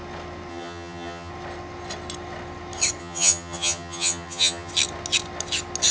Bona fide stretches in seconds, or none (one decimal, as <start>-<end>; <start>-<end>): 0.0-0.5; 1.3-3.0; 4.7-5.9